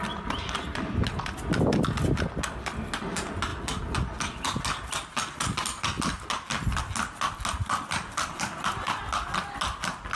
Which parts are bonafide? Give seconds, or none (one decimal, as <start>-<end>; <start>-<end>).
0.0-10.2